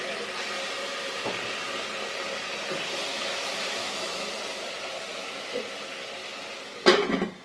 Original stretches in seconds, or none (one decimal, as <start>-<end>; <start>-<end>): 0.0-3.1; 4.3-5.1; 5.6-7.4